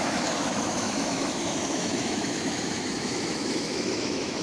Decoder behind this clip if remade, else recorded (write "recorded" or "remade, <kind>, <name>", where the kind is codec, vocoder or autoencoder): remade, autoencoder, DAC-VAE